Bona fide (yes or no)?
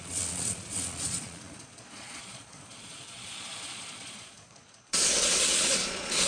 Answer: no